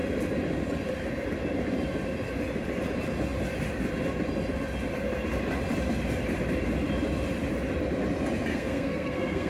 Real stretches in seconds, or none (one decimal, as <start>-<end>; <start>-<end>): 0.0-8.5